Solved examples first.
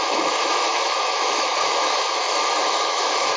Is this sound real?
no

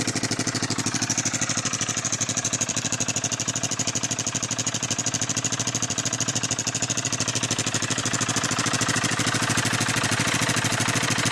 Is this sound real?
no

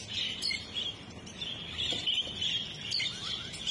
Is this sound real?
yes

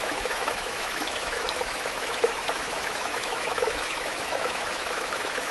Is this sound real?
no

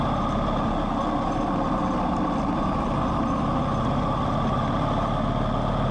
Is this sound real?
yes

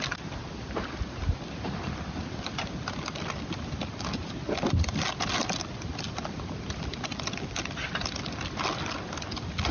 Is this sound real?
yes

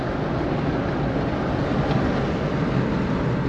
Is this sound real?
yes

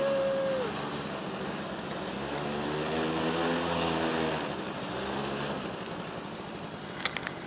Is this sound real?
yes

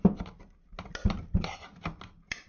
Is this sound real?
yes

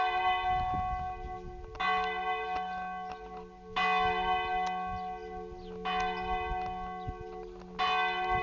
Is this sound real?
yes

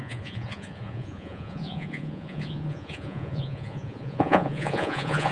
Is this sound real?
no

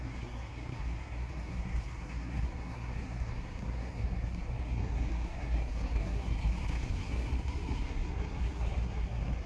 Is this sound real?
no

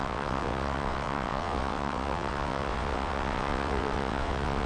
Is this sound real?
no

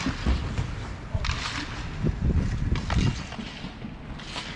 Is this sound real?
yes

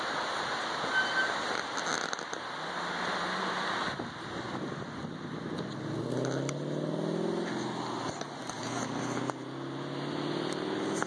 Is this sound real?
yes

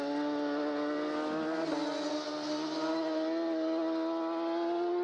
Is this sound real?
yes